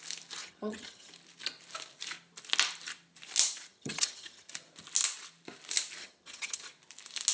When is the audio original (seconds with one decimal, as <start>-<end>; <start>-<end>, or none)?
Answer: 0.0-0.4; 1.1-3.7; 4.5-6.0; 6.6-7.3